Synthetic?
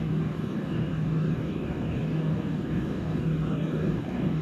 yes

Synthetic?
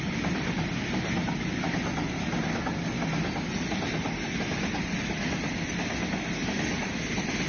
no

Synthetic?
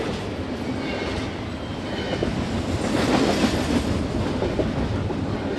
no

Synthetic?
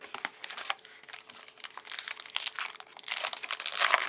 no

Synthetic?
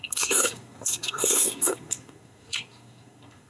yes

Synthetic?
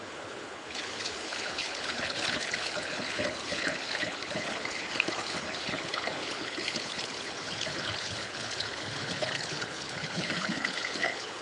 yes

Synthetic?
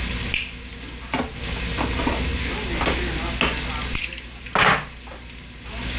no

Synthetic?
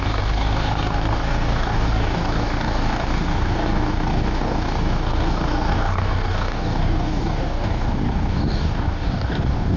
yes